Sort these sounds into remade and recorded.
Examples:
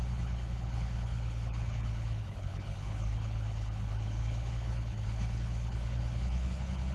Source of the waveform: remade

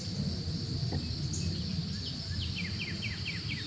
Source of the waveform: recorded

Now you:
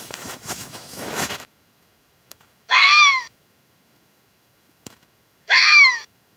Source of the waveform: remade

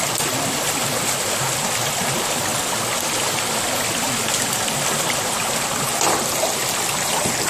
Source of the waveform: recorded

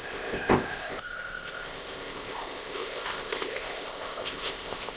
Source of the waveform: remade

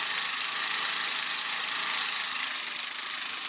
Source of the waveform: recorded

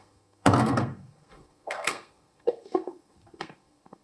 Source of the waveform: remade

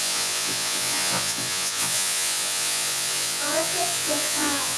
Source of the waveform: remade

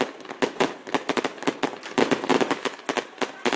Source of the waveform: recorded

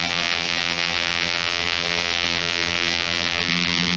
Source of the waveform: remade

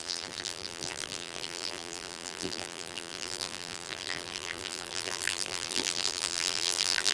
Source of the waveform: remade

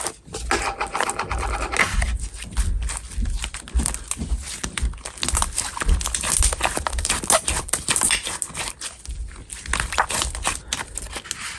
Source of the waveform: recorded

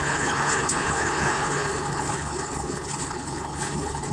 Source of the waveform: remade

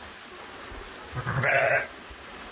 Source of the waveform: recorded